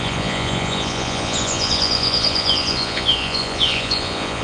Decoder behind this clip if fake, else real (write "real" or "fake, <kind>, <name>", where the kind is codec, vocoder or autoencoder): fake, vocoder, Vocos